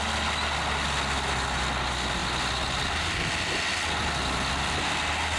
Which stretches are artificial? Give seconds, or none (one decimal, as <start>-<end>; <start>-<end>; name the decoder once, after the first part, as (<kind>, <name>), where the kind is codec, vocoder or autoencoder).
none